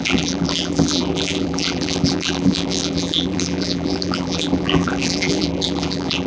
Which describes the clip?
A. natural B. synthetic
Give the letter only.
B